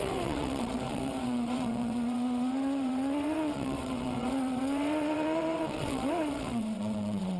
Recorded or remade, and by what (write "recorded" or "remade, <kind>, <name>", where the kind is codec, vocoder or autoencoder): remade, vocoder, WaveNeXt